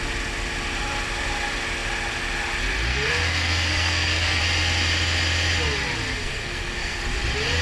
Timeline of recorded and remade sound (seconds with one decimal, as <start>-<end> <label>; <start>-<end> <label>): 0.0-2.9 recorded; 2.9-4.4 remade; 4.4-6.1 recorded; 6.1-7.0 remade; 7.0-7.6 recorded